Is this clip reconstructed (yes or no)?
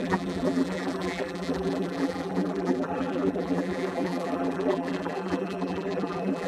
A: yes